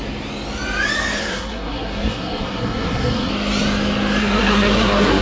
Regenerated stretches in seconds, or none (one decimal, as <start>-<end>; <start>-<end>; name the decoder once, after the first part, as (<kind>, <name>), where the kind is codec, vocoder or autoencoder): 1.2-3.3 (codec, SNAC); 4.2-5.2